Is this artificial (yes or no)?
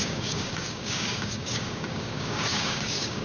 yes